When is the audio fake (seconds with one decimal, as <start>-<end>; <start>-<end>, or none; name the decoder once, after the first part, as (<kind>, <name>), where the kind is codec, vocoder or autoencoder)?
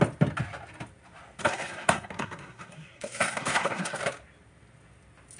1.4-4.0 (codec, SNAC)